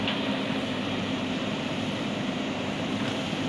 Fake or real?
fake